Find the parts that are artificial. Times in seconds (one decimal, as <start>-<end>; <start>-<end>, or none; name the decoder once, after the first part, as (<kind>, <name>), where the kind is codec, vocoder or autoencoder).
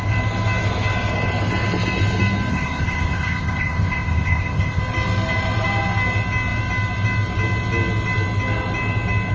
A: 2.5-4.8 (codec, ZipCodec)